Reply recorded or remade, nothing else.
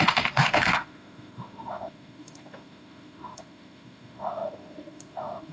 remade